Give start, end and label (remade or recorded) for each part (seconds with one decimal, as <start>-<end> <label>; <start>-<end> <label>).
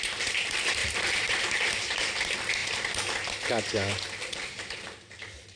0.0-0.8 recorded; 0.8-1.6 remade; 1.6-5.6 recorded